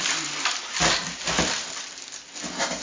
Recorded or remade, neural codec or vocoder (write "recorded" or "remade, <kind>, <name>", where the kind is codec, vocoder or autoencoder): recorded